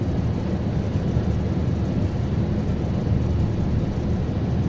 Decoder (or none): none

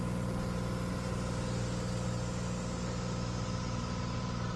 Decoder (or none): none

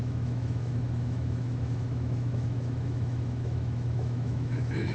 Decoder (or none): autoencoder, DAC-VAE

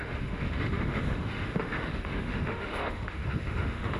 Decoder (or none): autoencoder, DAC-VAE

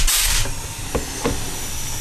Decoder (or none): none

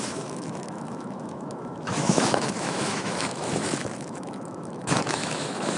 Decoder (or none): autoencoder, DAC-VAE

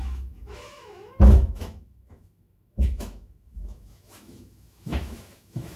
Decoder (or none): autoencoder, DAC-VAE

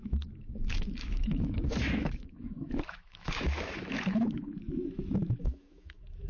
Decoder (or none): autoencoder, DAC-VAE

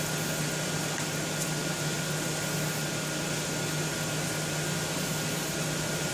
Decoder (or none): none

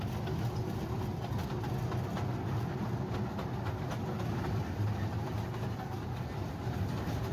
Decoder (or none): none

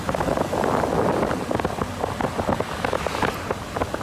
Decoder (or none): none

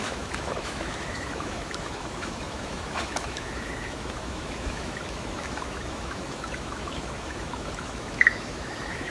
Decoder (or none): autoencoder, DAC-VAE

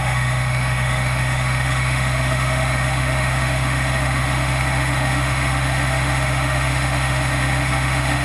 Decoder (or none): autoencoder, DAC-VAE